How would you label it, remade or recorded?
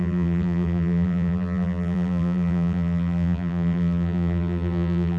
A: remade